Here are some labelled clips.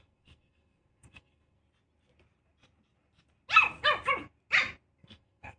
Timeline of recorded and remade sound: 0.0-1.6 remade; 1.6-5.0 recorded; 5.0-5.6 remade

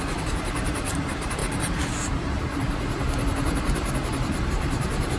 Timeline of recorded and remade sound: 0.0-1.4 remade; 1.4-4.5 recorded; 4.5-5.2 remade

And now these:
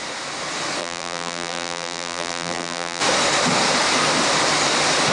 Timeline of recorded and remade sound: 0.0-0.8 recorded; 0.8-3.0 remade; 3.0-5.1 recorded

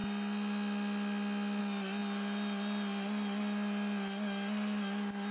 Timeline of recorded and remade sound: 0.0-5.3 recorded

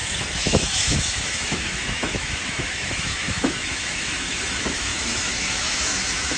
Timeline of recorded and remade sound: 0.0-6.4 remade

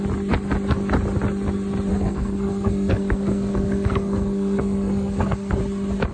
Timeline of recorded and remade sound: 0.0-1.9 recorded; 1.9-5.6 remade; 5.6-6.1 recorded

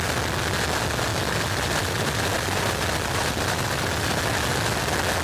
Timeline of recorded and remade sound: 0.0-1.1 recorded; 1.1-4.2 remade; 4.2-5.2 recorded